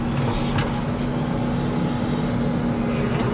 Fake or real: real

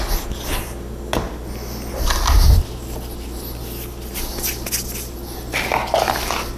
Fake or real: real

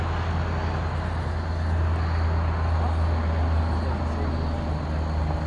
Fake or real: real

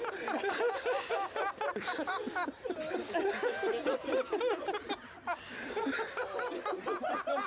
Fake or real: real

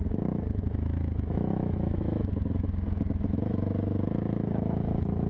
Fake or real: fake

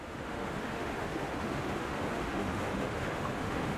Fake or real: fake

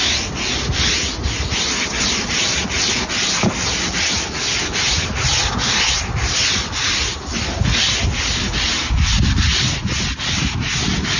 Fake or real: real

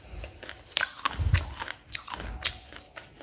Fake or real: real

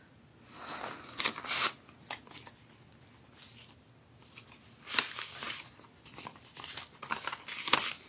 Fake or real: real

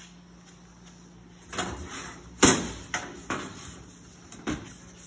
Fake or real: real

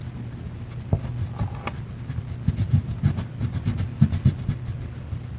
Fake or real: real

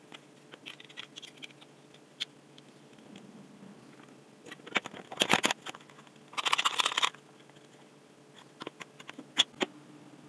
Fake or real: real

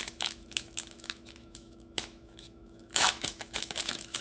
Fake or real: fake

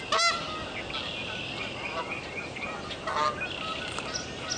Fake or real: real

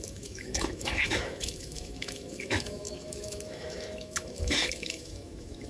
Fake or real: fake